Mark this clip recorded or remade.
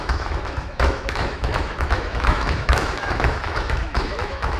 remade